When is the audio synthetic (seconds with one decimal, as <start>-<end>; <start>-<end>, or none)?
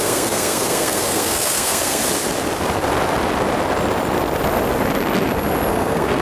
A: 0.0-2.0; 5.7-6.2